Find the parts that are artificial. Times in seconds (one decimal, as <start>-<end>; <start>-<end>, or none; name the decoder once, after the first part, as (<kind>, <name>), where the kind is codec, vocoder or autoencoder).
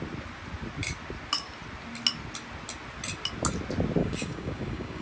4.0-5.0 (codec, DAC)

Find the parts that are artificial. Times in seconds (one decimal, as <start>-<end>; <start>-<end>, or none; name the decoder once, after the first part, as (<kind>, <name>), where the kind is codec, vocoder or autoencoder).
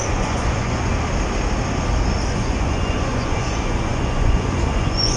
0.0-0.9 (vocoder, Vocos); 2.3-5.2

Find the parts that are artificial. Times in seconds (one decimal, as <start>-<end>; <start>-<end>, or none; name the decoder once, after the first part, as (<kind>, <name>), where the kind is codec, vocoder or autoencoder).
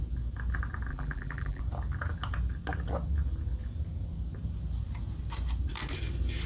0.9-1.6 (vocoder, BigVGAN v2)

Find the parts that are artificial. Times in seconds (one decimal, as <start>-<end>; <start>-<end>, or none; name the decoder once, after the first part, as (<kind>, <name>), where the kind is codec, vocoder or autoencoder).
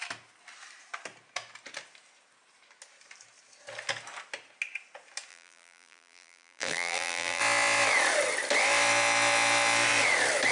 5.3-7.4 (vocoder, BigVGAN v2)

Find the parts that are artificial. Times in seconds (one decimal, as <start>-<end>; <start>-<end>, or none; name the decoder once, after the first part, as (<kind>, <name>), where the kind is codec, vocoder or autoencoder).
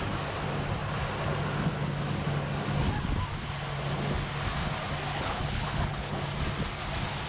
5.1-6.2 (codec, HILCodec)